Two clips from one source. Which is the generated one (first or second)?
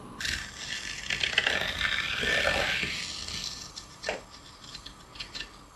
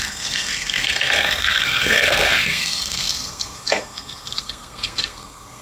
second